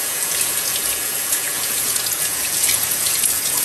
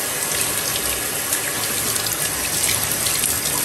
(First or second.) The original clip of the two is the second